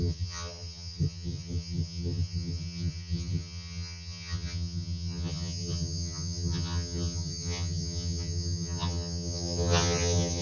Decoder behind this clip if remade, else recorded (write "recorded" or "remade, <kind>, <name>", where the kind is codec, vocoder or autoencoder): remade, vocoder, HiFi-GAN